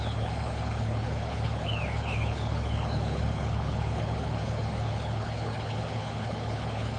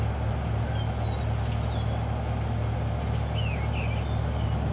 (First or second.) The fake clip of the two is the first